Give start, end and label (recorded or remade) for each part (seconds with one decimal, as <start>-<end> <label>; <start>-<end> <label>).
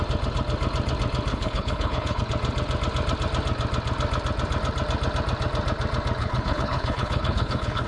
0.0-1.3 recorded; 1.3-2.2 remade; 2.2-6.2 recorded; 6.2-7.9 remade